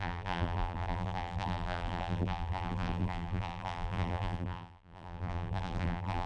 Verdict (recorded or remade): remade